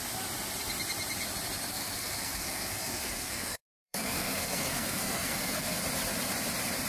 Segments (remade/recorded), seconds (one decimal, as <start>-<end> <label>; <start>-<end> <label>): 0.0-1.7 recorded; 1.7-5.8 remade; 5.8-6.9 recorded